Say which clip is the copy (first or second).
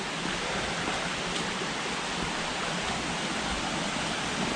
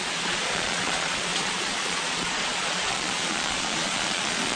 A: second